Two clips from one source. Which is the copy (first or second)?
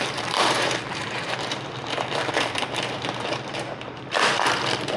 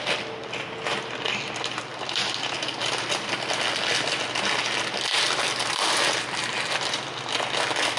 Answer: first